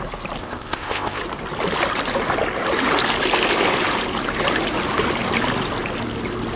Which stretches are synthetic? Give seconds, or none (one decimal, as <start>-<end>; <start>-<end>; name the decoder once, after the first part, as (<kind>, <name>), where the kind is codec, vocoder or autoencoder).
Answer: 0.4-1.2 (codec, ZipCodec)